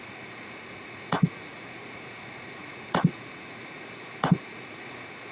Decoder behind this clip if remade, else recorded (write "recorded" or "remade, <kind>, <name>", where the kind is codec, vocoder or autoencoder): remade, vocoder, Vocos